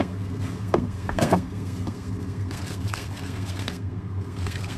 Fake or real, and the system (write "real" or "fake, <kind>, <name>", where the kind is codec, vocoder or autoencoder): fake, codec, SNAC